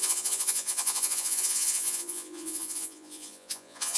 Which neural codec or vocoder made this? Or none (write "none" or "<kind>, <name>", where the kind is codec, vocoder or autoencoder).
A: vocoder, Vocos